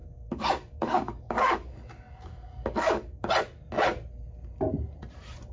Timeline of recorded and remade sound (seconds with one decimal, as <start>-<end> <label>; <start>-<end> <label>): 0.0-3.3 remade; 3.3-5.5 recorded